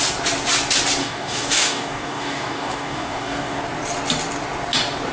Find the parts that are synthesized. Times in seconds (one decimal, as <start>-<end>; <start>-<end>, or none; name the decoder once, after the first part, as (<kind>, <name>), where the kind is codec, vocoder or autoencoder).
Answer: 1.0-3.6 (codec, DAC)